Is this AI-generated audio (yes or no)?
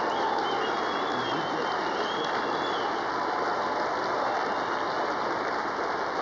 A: no